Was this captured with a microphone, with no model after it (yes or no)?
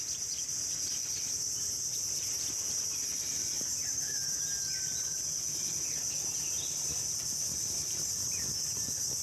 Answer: yes